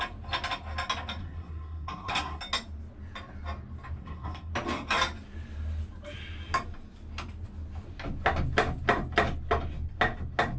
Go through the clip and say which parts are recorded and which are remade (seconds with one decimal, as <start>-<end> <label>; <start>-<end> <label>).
0.0-1.2 recorded; 1.2-2.4 remade; 2.4-4.0 recorded; 4.0-4.5 remade; 4.5-10.6 recorded